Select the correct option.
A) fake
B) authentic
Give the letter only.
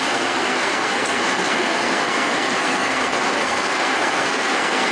A